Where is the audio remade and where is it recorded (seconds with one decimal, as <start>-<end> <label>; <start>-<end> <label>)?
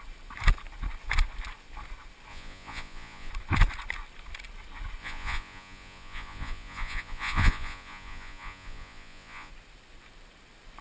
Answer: 0.0-2.3 recorded; 2.3-3.3 remade; 3.3-5.0 recorded; 5.0-9.5 remade; 9.5-10.8 recorded